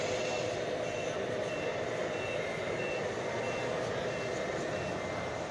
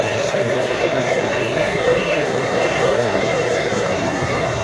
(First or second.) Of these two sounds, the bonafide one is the first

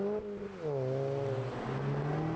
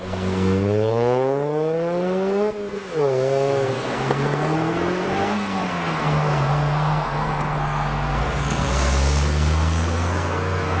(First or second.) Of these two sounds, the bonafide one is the first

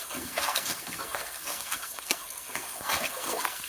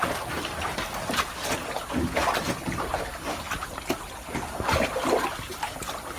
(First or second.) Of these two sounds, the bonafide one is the second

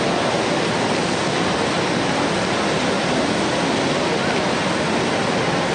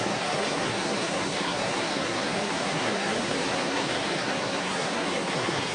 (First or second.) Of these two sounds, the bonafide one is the first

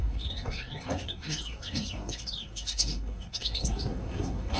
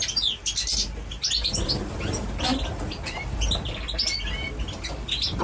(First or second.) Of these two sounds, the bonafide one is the second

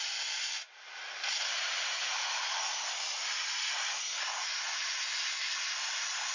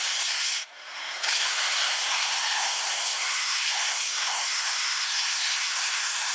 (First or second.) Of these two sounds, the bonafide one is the first